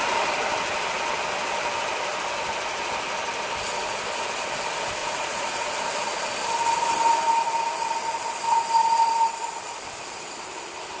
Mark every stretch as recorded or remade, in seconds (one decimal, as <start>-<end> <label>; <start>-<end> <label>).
0.0-5.0 recorded; 5.0-5.7 remade; 5.7-11.0 recorded